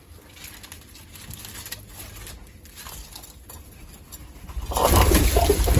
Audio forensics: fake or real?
real